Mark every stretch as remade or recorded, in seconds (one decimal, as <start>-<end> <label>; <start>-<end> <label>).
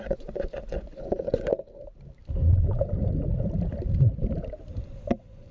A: 0.0-1.5 remade; 1.5-4.8 recorded; 4.8-5.5 remade